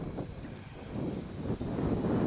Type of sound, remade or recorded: recorded